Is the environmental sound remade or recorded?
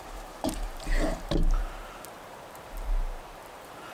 remade